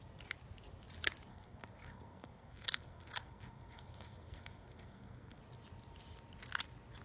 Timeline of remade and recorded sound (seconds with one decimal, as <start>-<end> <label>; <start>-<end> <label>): 0.0-1.3 recorded; 1.3-5.4 remade; 5.4-7.0 recorded